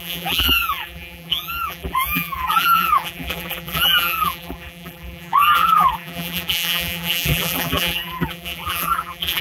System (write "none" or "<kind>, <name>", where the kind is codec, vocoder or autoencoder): vocoder, BigVGAN v2